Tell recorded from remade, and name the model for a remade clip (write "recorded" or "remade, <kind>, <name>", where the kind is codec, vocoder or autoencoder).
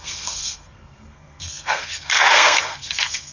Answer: remade, codec, SNAC